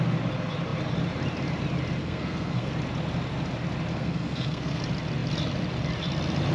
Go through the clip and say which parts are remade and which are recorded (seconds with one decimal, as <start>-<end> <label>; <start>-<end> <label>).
0.0-2.0 recorded; 2.0-2.7 remade; 2.7-3.9 recorded; 3.9-4.8 remade; 4.8-6.5 recorded